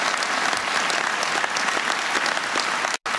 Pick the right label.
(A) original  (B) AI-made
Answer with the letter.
A